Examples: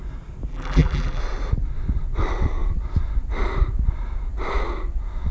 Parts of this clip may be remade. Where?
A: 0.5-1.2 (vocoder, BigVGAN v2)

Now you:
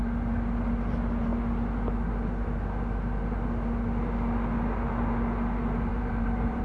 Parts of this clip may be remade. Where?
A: 5.9-6.6 (vocoder, BigVGAN v2)

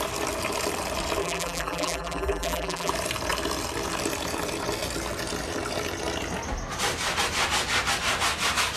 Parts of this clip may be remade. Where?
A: 1.2-2.9 (vocoder, BigVGAN v2)

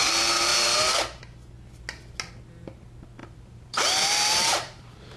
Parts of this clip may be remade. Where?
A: 3.2-5.2 (vocoder, BigVGAN v2)

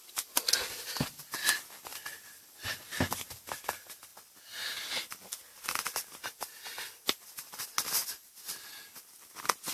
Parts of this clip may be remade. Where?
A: 1.9-2.7 (vocoder, BigVGAN v2)

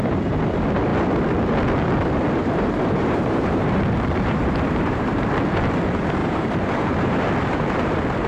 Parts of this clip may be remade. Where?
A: 2.4-5.3 (vocoder, BigVGAN v2); 6.2-7.2

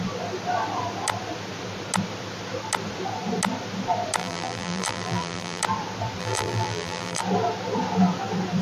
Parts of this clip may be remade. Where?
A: 4.2-5.6 (vocoder, BigVGAN v2); 6.2-7.2

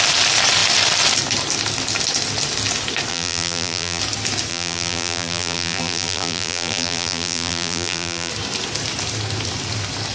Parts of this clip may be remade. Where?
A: 3.1-4.0 (vocoder, BigVGAN v2); 4.5-8.3